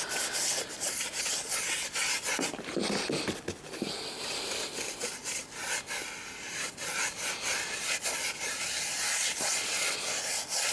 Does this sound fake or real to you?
real